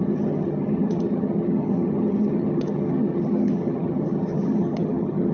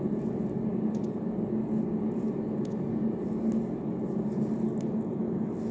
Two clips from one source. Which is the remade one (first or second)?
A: first